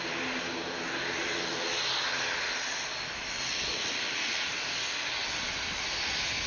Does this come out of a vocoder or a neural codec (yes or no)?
no